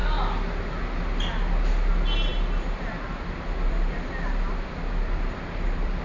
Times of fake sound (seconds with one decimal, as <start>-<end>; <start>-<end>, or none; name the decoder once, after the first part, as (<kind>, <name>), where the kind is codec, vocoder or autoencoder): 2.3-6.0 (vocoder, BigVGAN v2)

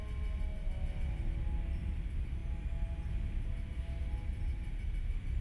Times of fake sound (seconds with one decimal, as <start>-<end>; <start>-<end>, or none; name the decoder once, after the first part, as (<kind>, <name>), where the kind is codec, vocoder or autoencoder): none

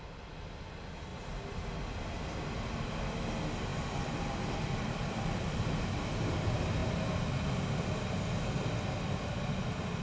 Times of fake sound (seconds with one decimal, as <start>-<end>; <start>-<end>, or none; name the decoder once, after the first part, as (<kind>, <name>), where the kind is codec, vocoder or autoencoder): none